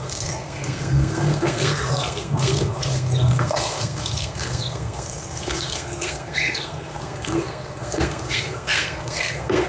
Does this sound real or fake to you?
fake